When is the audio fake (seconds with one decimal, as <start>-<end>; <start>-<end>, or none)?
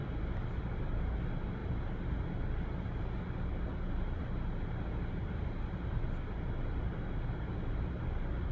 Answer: none